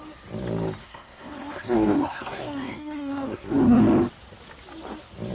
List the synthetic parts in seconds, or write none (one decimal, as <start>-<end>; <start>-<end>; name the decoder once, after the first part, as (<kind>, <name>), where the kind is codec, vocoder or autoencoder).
0.8-3.8 (codec, SNAC)